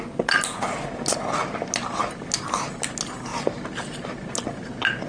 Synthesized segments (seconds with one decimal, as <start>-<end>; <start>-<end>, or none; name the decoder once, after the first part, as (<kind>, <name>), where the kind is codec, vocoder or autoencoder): none